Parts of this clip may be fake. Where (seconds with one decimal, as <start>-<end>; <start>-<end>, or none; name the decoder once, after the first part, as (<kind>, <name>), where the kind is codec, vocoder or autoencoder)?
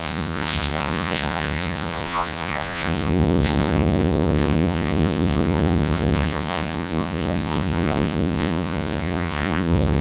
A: 0.0-10.0 (vocoder, Vocos)